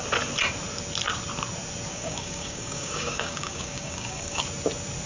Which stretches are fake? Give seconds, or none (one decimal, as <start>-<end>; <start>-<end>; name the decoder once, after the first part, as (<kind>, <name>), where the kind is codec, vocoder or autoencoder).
1.9-4.4 (codec, DAC)